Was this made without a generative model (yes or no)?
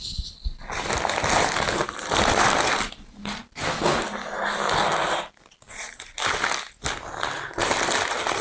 yes